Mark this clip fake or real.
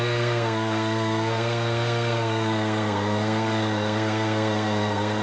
fake